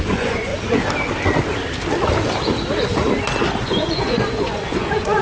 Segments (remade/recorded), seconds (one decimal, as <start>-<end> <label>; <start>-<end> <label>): 0.0-0.5 remade; 0.5-3.6 recorded; 3.6-5.2 remade